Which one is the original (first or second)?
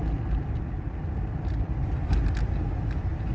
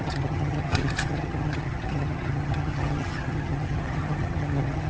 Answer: first